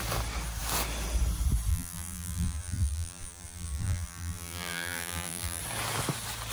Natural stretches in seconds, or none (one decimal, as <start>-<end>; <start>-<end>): 0.0-1.7; 5.6-6.5